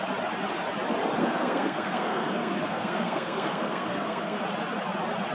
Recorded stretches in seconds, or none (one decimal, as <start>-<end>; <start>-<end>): 0.0-1.2; 4.4-5.3